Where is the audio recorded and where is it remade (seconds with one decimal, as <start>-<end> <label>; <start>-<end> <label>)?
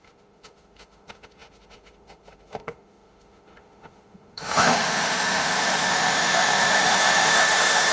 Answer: 0.0-7.9 remade